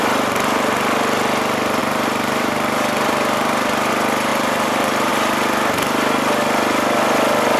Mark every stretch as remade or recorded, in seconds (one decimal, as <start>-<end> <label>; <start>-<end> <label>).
0.0-1.8 recorded; 1.8-3.9 remade; 3.9-4.3 recorded; 4.3-5.1 remade; 5.1-7.6 recorded